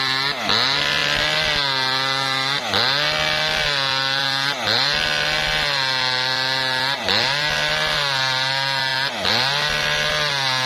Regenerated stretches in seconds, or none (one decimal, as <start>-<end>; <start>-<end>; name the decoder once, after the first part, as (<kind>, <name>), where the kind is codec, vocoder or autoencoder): none